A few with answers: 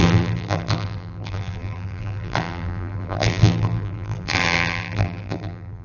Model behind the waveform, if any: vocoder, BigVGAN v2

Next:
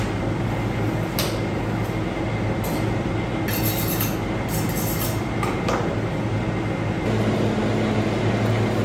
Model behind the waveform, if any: none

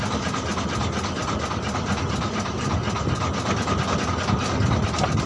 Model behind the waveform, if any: none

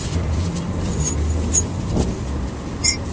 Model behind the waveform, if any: vocoder, BigVGAN v2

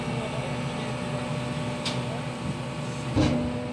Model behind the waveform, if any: none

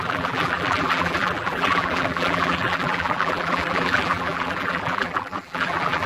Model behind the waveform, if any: vocoder, BigVGAN v2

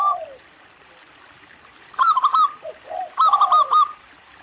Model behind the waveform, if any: vocoder, BigVGAN v2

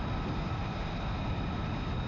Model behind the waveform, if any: none